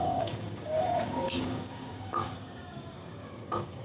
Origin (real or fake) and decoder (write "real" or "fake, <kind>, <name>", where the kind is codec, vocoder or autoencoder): fake, codec, DAC